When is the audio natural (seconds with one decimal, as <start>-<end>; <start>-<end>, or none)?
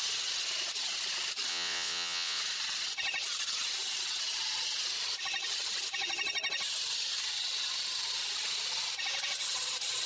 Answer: 0.0-1.5; 2.4-10.1